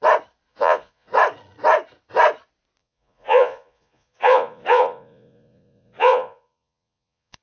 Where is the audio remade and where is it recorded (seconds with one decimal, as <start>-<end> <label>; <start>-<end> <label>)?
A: 0.0-0.5 recorded; 0.5-1.1 remade; 1.1-2.8 recorded; 2.8-7.4 remade